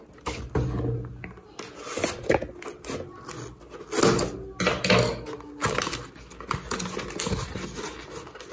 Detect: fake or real real